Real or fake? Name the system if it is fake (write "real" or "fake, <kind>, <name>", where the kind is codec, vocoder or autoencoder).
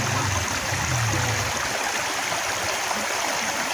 real